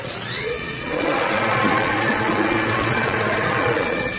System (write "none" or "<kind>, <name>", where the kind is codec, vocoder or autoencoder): vocoder, Vocos